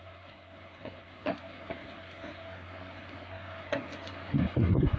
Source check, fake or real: fake